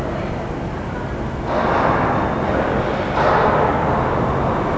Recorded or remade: recorded